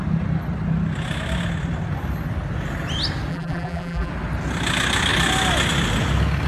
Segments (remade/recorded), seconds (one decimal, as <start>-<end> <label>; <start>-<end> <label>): 0.0-3.3 recorded; 3.3-4.1 remade; 4.1-6.5 recorded

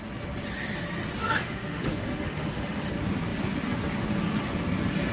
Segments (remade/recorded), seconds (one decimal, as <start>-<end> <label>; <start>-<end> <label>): 0.0-1.2 recorded; 1.2-2.9 remade; 2.9-5.1 recorded

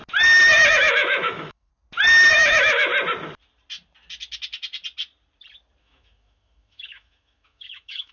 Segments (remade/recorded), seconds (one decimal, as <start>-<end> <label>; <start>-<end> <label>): 0.0-0.7 recorded; 0.7-1.7 remade; 1.7-2.3 recorded; 2.3-2.9 remade; 2.9-5.8 recorded; 5.8-8.1 remade

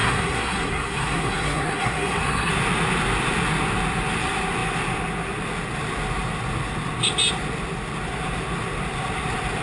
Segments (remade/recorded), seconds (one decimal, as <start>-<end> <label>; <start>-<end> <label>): 0.0-2.5 remade; 2.5-9.6 recorded

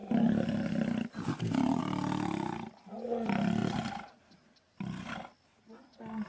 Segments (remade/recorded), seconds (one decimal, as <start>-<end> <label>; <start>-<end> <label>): 0.0-6.3 recorded

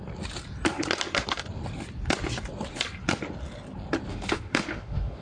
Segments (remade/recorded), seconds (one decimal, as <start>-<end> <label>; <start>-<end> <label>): 0.0-4.1 recorded; 4.1-5.2 remade

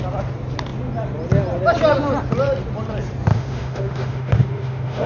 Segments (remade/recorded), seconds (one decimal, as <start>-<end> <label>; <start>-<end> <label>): 0.0-3.3 recorded; 3.3-5.1 remade